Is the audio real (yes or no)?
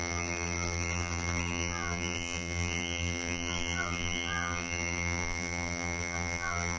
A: no